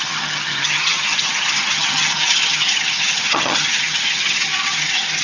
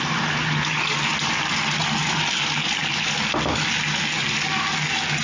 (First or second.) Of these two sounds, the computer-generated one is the first